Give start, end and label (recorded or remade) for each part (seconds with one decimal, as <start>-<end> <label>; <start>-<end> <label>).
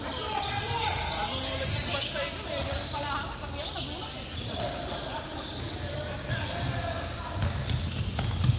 0.0-8.6 recorded